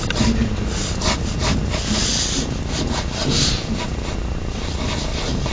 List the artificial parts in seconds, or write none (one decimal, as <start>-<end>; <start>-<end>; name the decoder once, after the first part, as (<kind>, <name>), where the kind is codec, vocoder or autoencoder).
3.2-5.5 (vocoder, BigVGAN v2)